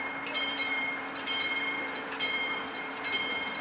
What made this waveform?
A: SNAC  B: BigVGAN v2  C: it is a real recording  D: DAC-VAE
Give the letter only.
B